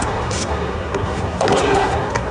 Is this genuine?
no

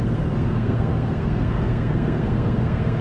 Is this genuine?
no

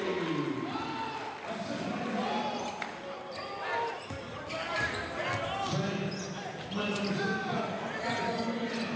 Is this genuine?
yes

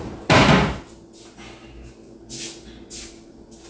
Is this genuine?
yes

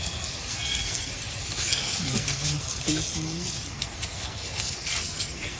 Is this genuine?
no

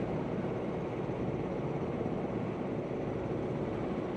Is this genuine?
yes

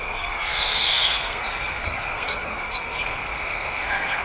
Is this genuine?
no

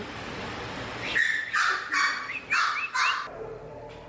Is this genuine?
yes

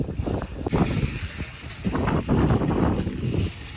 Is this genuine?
yes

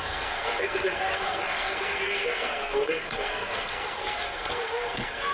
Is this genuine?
no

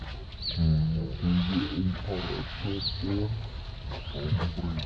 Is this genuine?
yes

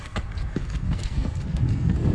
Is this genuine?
no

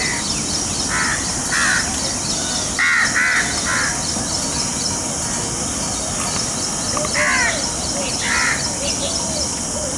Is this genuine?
yes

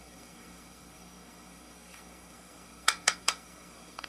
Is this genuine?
no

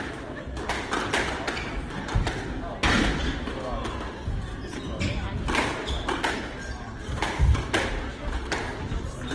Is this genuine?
yes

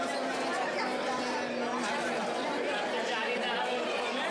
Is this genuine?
yes